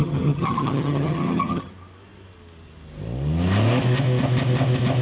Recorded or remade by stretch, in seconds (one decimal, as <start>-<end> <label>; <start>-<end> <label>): 0.0-1.7 remade; 1.7-5.0 recorded